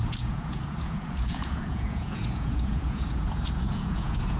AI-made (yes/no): yes